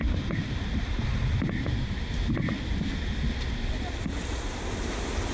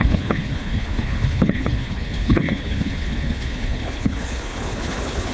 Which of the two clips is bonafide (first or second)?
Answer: first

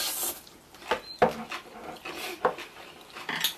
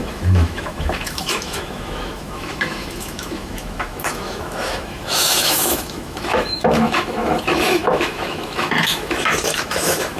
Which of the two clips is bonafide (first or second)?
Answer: first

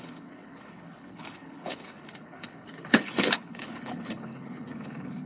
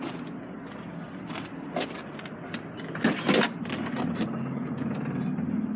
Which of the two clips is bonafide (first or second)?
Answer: second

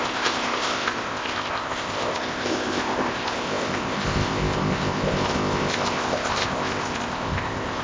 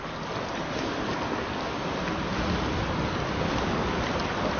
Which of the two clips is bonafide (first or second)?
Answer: second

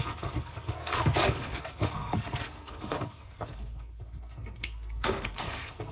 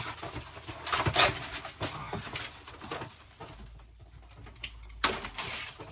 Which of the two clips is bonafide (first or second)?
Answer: second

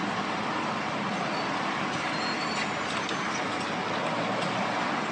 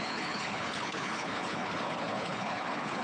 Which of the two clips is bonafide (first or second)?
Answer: first